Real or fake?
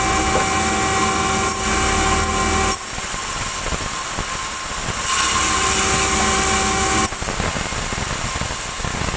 real